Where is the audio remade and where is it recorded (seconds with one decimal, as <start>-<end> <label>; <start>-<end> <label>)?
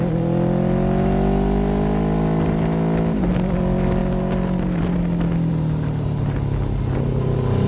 0.0-7.7 recorded